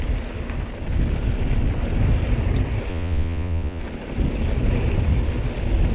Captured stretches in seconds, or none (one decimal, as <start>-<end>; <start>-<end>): 0.0-2.9; 3.8-5.9